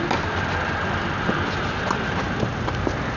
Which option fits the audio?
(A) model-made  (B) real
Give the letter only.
B